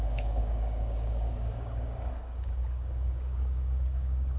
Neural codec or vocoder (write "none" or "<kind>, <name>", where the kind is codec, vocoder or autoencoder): codec, DAC